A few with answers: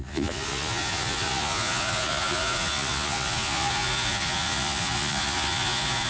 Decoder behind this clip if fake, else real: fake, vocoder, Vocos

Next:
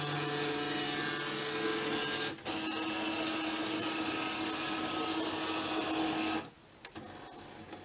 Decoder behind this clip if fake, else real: real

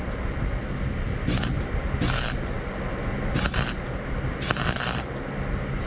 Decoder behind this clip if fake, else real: real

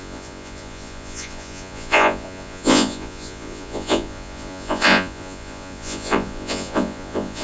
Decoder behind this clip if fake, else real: fake, vocoder, Vocos